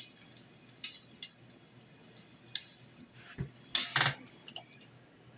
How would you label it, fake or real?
real